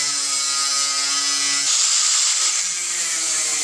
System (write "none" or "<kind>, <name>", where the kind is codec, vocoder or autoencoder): none